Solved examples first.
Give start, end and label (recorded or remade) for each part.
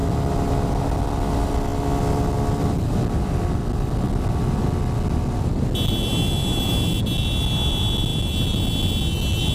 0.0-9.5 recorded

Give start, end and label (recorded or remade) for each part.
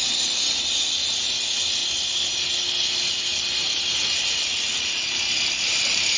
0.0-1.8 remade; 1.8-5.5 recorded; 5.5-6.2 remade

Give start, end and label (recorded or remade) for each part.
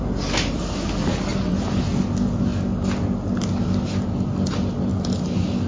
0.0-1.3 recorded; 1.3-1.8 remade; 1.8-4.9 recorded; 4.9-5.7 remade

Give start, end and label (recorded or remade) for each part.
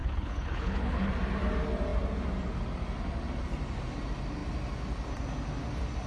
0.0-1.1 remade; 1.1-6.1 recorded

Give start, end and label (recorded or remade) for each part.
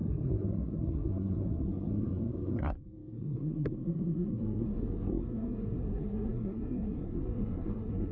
0.0-8.1 remade